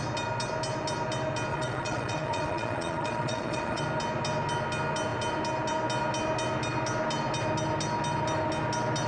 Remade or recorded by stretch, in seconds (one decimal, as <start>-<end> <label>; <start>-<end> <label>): 0.0-1.5 recorded; 1.5-3.8 remade; 3.8-9.1 recorded